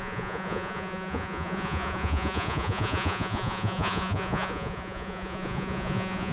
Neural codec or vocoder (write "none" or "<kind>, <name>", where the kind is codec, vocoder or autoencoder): vocoder, Vocos